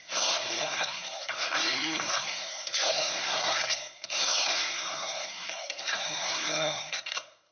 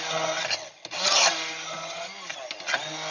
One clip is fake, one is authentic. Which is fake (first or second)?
first